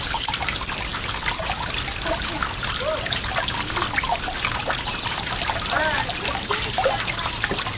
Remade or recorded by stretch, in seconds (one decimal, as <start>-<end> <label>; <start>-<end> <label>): 0.0-7.8 recorded

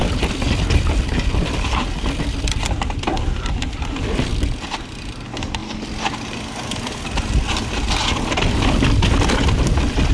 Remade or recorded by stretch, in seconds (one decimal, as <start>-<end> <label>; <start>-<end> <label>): 0.0-10.1 recorded

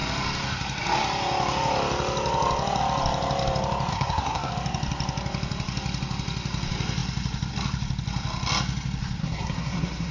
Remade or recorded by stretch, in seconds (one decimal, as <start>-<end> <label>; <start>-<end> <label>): 0.0-3.9 recorded; 3.9-4.5 remade; 4.5-9.2 recorded; 9.2-10.1 remade

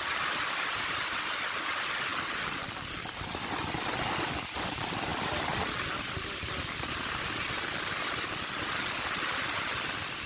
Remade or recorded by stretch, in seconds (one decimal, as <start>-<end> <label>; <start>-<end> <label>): 0.0-10.3 recorded

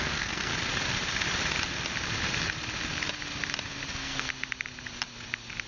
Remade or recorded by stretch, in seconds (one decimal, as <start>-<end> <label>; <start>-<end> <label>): 0.0-0.5 remade; 0.5-3.9 recorded; 3.9-4.3 remade; 4.3-5.7 recorded

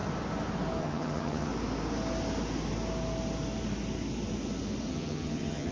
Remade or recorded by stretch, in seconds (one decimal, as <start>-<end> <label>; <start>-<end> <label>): 0.0-0.8 recorded; 0.8-1.5 remade; 1.5-4.9 recorded; 4.9-5.7 remade